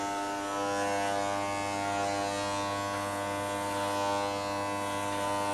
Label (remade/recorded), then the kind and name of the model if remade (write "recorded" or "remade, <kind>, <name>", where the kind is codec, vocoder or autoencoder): recorded